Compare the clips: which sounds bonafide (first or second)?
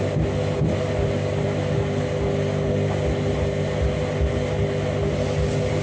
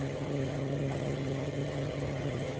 first